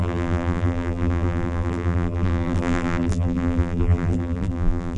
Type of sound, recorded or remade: remade